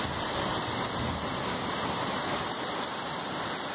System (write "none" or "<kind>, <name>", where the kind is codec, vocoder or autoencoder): none